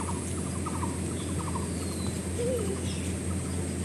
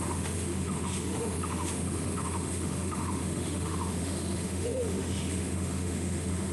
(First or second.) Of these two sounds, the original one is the first